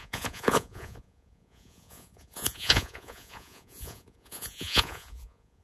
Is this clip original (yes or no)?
no